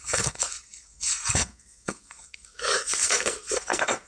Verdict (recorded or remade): remade